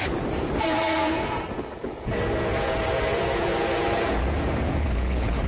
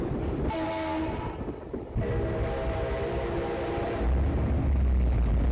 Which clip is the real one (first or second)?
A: second